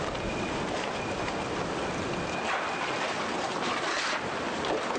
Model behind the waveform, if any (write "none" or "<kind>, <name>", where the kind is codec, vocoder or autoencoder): none